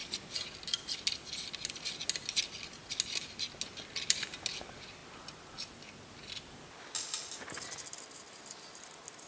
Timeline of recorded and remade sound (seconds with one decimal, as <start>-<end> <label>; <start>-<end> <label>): 0.0-9.3 recorded